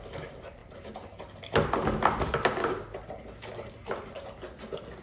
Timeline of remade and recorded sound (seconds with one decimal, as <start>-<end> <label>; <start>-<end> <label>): 0.0-5.0 recorded